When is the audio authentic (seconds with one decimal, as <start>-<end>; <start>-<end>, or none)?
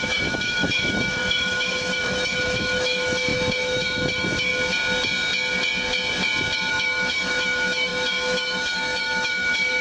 4.5-6.7